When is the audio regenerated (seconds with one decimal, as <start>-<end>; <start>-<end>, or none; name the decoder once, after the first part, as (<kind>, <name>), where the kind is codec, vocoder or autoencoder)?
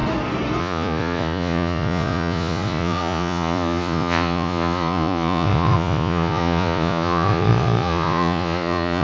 0.6-9.0 (vocoder, Vocos)